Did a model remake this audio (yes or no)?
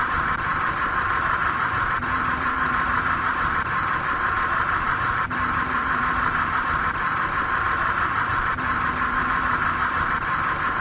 yes